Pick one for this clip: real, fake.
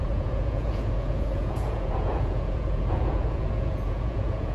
fake